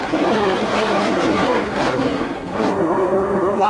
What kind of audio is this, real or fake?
fake